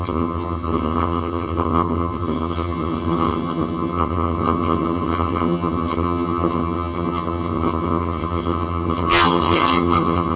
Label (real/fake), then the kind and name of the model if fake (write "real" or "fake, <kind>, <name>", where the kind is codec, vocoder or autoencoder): fake, vocoder, HiFi-GAN